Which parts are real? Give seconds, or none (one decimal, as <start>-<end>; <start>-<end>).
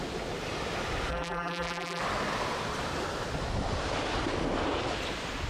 0.0-1.1; 2.0-5.5